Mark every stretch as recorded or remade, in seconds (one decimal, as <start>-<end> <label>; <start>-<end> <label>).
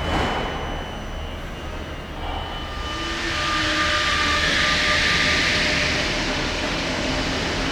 0.0-4.1 recorded; 4.1-4.6 remade; 4.6-6.2 recorded; 6.2-7.1 remade; 7.1-7.7 recorded